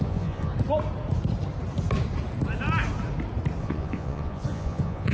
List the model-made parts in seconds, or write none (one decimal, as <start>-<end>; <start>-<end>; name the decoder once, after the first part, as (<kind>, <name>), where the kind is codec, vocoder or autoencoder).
0.0-0.5 (vocoder, Vocos); 3.6-5.1